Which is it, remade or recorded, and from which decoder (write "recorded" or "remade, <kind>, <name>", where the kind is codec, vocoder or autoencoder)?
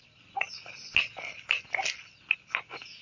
recorded